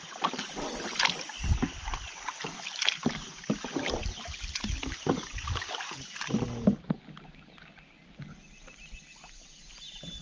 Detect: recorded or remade recorded